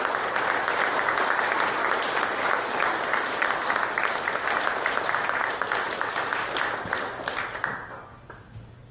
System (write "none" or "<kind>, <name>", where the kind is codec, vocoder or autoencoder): none